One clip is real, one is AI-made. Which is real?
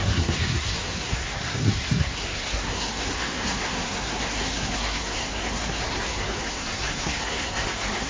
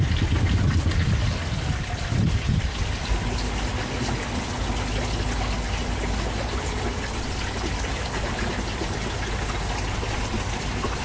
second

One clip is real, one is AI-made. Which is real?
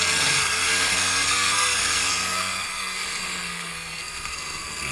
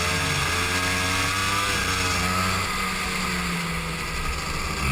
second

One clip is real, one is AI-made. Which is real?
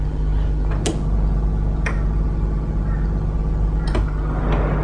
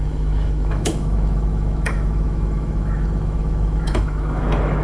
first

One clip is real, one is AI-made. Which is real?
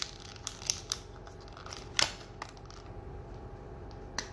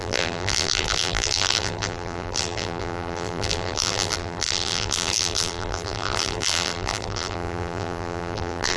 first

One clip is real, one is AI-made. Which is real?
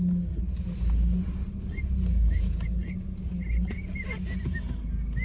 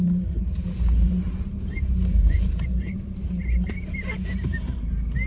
first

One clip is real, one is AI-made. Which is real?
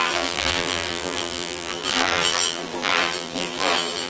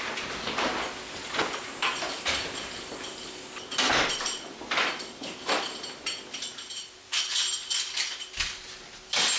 second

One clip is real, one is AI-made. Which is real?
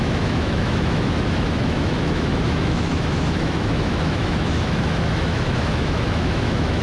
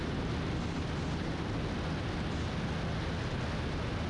second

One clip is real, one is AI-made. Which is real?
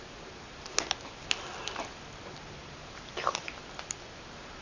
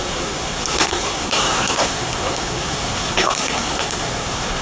first